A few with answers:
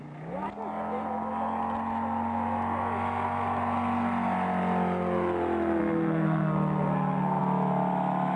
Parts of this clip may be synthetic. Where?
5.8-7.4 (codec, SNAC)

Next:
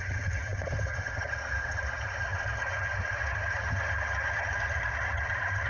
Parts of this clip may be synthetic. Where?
0.0-5.7 (vocoder, HiFi-GAN)

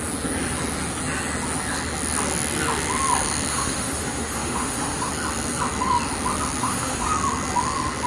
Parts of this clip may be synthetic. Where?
3.5-5.1 (autoencoder, DAC-VAE); 6.6-7.1